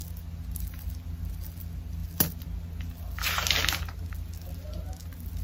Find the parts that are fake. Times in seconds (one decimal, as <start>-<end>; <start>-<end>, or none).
none